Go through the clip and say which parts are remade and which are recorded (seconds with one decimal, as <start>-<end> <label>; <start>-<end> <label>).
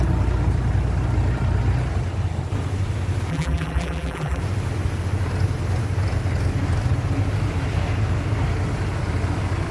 0.0-3.3 recorded; 3.3-4.4 remade; 4.4-9.7 recorded